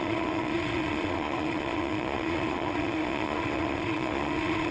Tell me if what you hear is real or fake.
fake